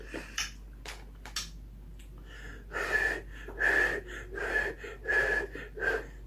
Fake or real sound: real